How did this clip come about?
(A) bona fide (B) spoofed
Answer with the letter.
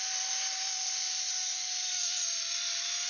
A